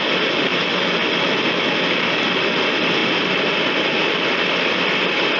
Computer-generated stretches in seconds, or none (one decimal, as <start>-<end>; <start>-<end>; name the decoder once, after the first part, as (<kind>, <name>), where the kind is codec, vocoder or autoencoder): 3.0-5.4 (vocoder, BigVGAN v2)